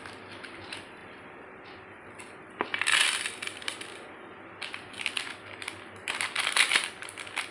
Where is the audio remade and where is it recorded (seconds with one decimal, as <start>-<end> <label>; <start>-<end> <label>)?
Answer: 0.0-7.5 recorded